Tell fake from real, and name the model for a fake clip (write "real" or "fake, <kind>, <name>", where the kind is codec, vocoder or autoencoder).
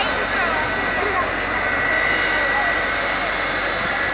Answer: real